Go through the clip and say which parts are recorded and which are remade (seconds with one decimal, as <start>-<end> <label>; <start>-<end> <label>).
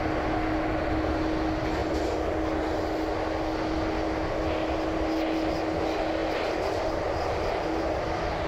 0.0-8.5 recorded